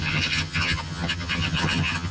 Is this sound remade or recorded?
remade